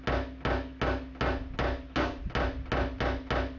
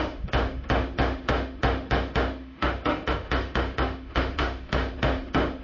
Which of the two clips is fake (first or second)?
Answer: second